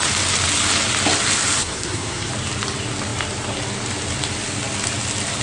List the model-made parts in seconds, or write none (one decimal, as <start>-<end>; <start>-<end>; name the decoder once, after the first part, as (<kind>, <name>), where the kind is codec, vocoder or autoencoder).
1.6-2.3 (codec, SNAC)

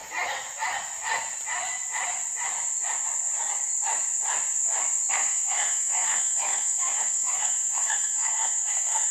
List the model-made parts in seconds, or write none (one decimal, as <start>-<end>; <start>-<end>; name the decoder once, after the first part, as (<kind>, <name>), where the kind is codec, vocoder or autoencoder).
5.1-9.1 (codec, SNAC)

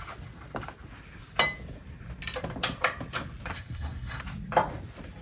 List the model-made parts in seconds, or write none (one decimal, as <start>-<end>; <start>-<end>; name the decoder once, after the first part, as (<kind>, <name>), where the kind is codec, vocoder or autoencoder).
3.5-4.2 (codec, SNAC)